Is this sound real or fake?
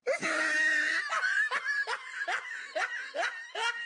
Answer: real